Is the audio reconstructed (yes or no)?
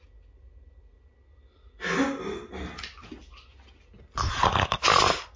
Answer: no